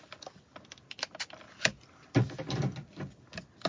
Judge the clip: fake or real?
real